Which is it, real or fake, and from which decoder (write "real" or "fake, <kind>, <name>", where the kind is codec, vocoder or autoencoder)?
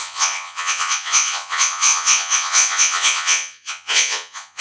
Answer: fake, vocoder, Vocos